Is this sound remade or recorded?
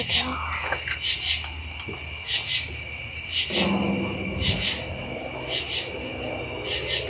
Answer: recorded